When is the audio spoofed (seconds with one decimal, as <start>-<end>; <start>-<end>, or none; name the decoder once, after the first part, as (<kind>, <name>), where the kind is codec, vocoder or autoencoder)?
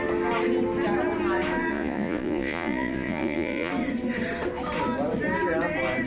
1.7-3.7 (vocoder, Vocos)